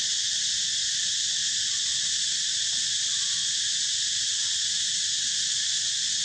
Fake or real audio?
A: real